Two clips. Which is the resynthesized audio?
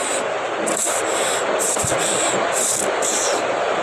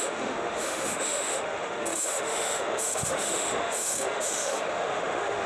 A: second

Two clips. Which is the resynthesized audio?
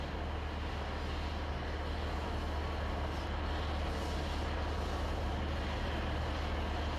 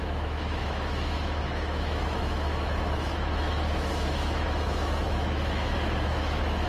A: second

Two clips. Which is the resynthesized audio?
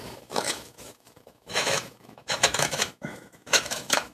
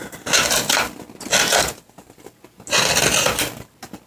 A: first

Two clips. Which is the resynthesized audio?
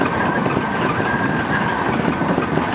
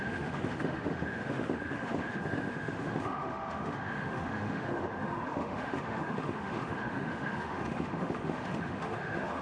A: second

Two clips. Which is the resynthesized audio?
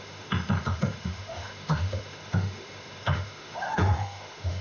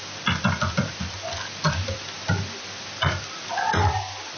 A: first